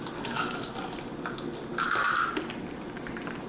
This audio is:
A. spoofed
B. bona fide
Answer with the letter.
B